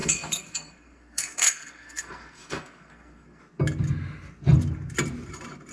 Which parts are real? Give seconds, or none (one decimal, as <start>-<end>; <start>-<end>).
3.4-5.7